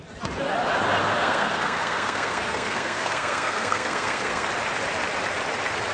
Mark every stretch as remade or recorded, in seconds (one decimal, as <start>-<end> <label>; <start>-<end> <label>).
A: 0.0-1.0 recorded; 1.0-4.5 remade; 4.5-5.9 recorded